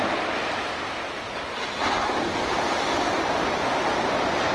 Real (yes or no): yes